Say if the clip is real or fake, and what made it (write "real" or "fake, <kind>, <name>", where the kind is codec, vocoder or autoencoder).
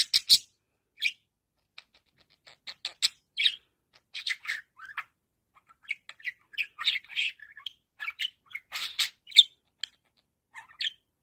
real